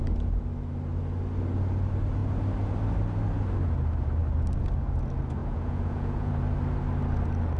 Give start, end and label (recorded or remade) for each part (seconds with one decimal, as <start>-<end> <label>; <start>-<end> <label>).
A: 0.0-5.4 recorded; 5.4-6.3 remade; 6.3-7.6 recorded